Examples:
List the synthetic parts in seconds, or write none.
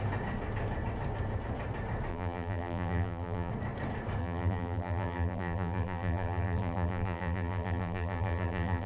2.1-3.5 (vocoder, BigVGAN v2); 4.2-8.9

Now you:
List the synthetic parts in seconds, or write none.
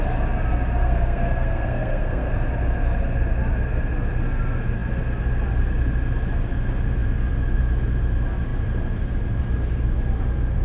0.8-2.3 (codec, SNAC)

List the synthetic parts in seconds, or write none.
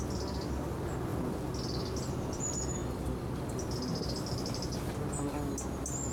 none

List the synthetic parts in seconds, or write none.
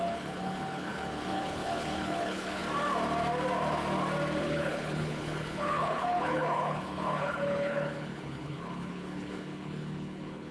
0.0-2.6 (codec, HILCodec); 4.4-10.5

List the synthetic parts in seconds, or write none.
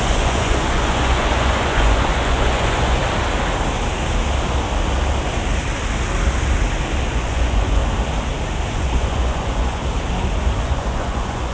0.0-3.0 (vocoder, Vocos); 7.1-7.8; 8.7-9.8; 10.6-11.5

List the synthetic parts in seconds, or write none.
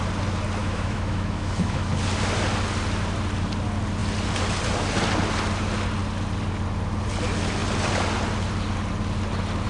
0.6-1.9 (autoencoder, DAC-VAE)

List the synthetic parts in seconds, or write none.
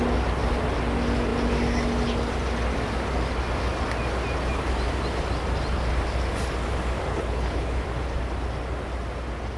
7.1-7.8 (codec, HILCodec)